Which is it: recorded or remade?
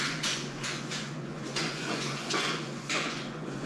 remade